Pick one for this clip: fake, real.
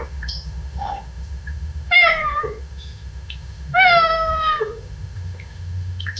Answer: fake